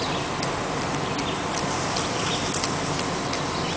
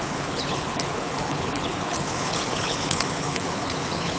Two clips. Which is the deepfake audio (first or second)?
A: second